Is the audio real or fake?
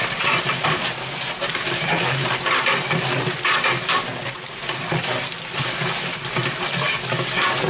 real